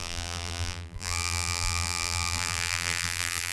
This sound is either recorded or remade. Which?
remade